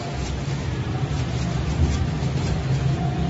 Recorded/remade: recorded